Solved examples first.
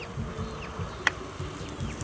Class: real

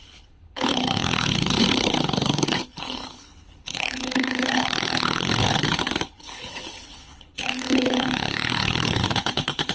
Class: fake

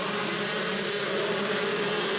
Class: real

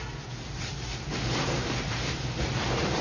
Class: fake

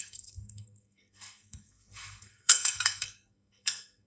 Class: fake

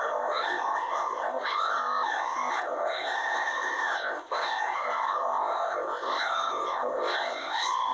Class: fake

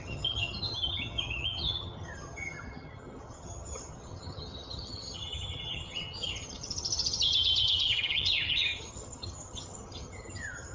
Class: fake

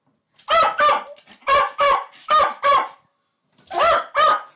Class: real